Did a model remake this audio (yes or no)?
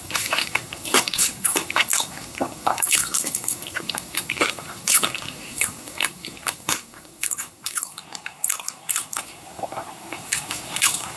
yes